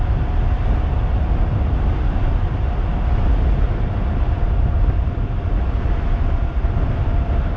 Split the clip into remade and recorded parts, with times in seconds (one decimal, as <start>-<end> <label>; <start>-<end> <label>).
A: 0.0-7.6 recorded

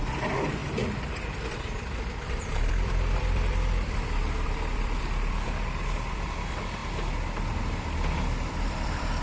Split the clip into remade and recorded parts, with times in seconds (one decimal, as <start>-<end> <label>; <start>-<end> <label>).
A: 0.0-6.8 remade; 6.8-7.6 recorded; 7.6-9.2 remade

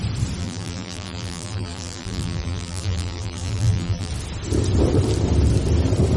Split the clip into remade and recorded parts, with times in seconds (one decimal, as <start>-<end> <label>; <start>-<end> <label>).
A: 0.0-0.4 recorded; 0.4-4.1 remade; 4.1-6.2 recorded

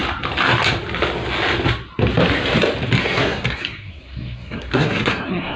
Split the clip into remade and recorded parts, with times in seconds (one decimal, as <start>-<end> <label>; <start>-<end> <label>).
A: 0.0-3.0 recorded; 3.0-5.6 remade

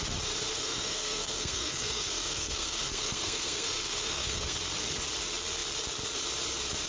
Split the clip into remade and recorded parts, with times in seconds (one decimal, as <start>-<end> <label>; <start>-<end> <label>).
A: 0.0-0.5 recorded; 0.5-4.6 remade; 4.6-6.9 recorded

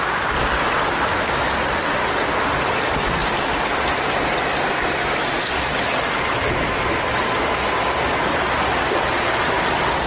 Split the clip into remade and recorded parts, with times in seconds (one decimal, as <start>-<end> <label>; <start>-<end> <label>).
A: 0.0-10.1 recorded

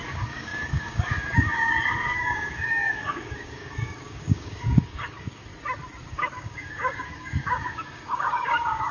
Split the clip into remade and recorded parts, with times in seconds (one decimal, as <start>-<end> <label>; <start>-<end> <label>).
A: 0.0-5.5 remade; 5.5-6.1 recorded; 6.1-8.9 remade